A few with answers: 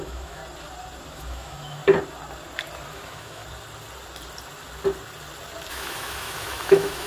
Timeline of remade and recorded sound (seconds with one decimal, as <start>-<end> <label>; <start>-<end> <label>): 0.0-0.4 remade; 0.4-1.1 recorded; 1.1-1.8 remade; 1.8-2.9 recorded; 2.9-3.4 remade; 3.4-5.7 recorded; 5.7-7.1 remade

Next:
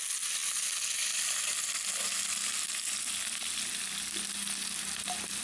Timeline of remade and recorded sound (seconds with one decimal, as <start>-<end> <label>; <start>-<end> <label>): 0.0-5.4 recorded

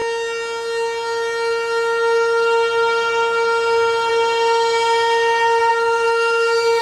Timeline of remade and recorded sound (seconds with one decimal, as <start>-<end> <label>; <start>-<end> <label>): 0.0-5.7 recorded; 5.7-6.8 remade

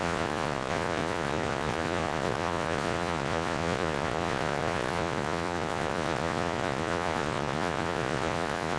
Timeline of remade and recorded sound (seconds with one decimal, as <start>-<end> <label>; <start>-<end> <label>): 0.0-8.8 remade

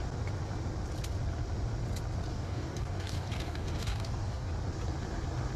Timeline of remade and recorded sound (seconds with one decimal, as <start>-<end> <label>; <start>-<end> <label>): 0.0-2.3 recorded; 2.3-4.5 remade; 4.5-5.6 recorded